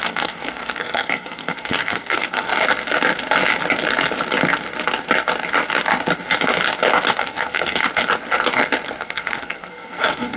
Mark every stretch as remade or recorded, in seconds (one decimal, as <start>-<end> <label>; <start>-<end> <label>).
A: 0.0-2.5 remade; 2.5-7.1 recorded; 7.1-7.8 remade; 7.8-8.9 recorded; 8.9-10.4 remade